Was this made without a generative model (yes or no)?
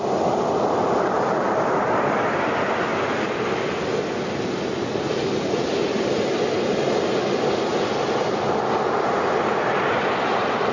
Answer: yes